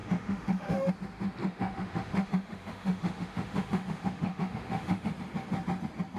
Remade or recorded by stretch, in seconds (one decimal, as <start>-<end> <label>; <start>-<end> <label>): 0.0-0.9 remade; 0.9-1.4 recorded; 1.4-5.1 remade; 5.1-6.2 recorded